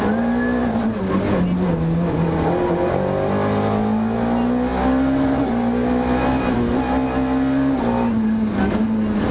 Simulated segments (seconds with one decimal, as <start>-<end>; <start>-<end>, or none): none